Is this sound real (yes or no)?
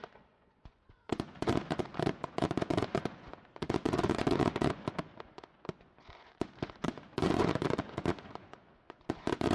no